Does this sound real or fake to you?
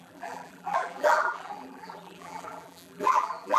fake